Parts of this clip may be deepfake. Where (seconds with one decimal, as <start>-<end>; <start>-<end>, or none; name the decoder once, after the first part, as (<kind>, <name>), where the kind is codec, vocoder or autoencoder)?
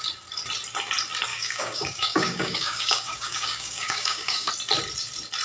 1.3-4.5 (codec, DAC)